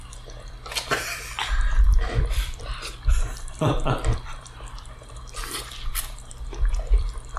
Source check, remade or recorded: remade